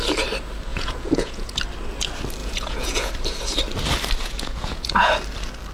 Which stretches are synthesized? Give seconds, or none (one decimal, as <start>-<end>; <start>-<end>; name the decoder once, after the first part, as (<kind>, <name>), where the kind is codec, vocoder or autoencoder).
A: 0.7-1.5 (vocoder, Vocos); 2.4-3.1; 4.2-5.1